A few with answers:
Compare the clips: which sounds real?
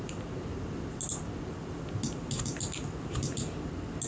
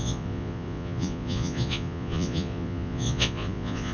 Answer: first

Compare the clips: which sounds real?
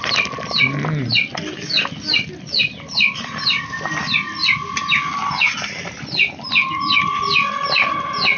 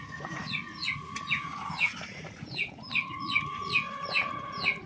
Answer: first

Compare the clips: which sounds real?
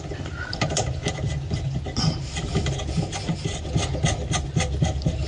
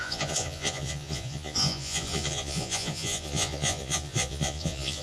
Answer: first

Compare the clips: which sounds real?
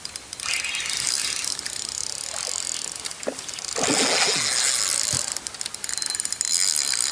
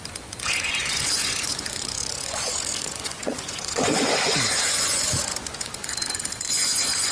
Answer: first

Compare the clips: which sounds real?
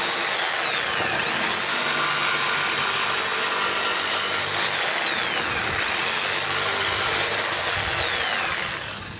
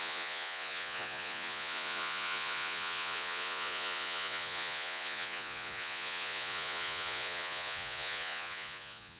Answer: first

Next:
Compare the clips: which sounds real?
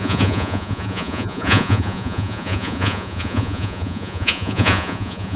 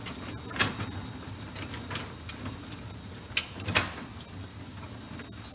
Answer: second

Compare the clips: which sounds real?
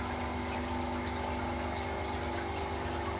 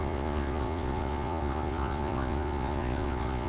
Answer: first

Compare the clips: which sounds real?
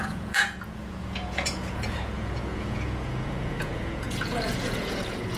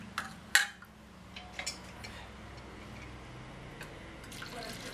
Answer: second